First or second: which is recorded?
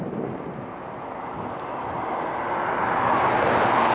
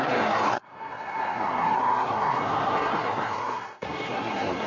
first